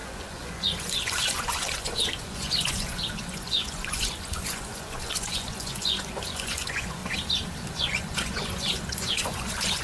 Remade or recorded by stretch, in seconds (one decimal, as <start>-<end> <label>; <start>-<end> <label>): 0.0-7.0 remade; 7.0-7.7 recorded; 7.7-9.8 remade